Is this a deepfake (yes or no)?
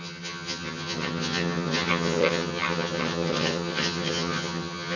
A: yes